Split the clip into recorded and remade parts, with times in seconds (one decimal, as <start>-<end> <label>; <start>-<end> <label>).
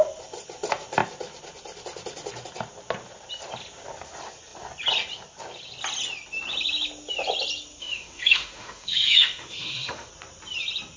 0.0-7.8 recorded; 7.8-10.1 remade; 10.1-11.0 recorded